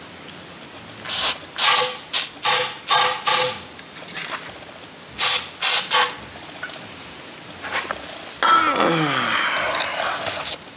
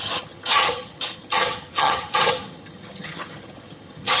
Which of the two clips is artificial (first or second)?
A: second